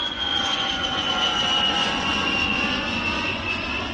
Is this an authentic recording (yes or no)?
no